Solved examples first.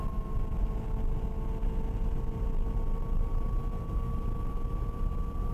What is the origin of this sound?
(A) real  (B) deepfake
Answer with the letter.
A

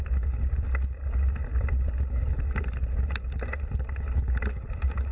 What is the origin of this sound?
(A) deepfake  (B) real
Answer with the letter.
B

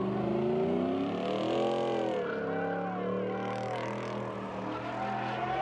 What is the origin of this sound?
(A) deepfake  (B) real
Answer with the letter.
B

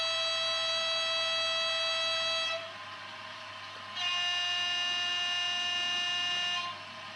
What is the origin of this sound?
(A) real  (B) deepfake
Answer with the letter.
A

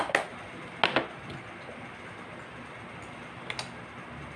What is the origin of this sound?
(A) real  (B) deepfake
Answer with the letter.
A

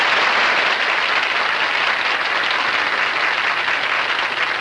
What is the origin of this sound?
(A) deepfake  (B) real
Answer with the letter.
B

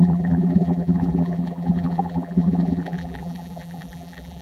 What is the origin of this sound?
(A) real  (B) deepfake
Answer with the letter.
B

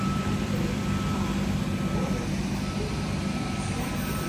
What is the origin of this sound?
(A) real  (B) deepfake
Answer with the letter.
B